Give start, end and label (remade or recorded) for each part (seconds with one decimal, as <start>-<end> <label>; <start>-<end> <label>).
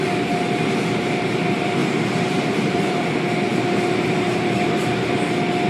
0.0-1.8 recorded; 1.8-3.0 remade; 3.0-3.5 recorded; 3.5-5.0 remade; 5.0-5.7 recorded